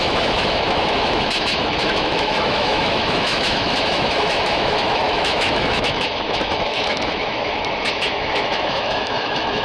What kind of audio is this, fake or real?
fake